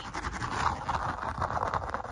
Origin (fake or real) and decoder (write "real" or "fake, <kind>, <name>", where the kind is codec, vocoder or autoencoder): real